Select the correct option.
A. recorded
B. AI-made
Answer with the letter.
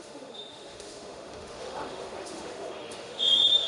B